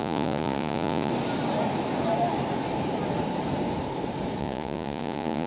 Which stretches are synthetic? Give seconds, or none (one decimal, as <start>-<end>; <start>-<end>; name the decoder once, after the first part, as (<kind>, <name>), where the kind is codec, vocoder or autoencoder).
0.0-1.1 (vocoder, Vocos); 4.4-5.5